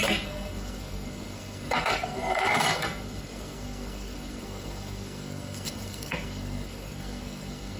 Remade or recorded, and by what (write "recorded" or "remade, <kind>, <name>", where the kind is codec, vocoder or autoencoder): remade, codec, SNAC